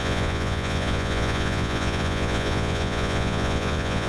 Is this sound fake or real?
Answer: fake